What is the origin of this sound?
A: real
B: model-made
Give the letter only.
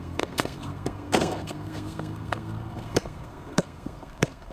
B